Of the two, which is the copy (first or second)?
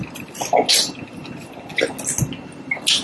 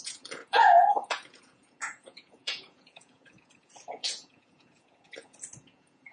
second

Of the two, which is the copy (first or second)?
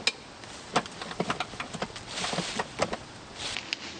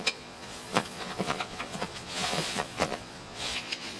second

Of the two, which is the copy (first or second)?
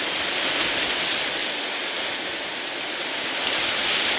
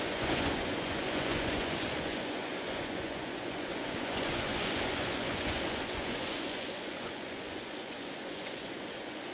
second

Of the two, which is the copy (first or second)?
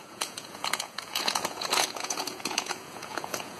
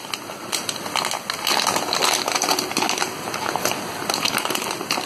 first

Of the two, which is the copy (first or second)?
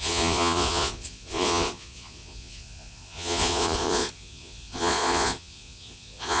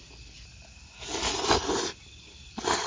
first